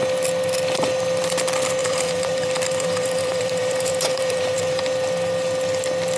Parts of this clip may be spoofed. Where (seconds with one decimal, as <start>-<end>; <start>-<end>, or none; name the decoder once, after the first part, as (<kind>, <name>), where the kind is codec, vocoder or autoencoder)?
1.8-4.8 (vocoder, BigVGAN v2)